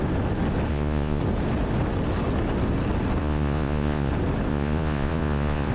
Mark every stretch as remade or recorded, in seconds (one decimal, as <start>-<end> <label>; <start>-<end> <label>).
0.0-0.7 recorded; 0.7-1.2 remade; 1.2-3.2 recorded; 3.2-4.1 remade; 4.1-4.5 recorded; 4.5-5.7 remade